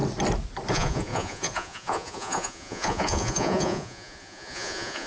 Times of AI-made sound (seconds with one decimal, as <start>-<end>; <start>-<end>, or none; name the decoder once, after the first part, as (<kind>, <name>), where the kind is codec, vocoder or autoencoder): 0.7-5.1 (vocoder, Vocos)